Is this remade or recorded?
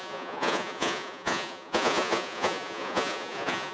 remade